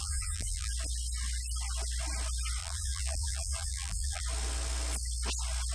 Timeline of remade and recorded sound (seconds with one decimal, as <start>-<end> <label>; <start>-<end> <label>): 0.0-0.7 remade; 0.7-2.6 recorded; 2.6-4.2 remade; 4.2-5.7 recorded